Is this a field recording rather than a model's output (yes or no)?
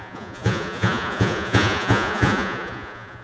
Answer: no